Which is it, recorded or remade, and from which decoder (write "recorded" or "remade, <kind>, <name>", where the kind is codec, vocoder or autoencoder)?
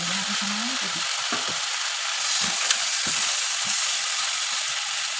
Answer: recorded